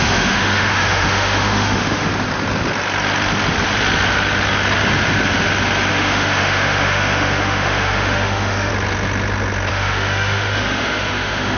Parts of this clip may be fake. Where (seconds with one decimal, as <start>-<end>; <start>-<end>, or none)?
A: 0.0-2.1; 5.9-8.7; 9.7-11.6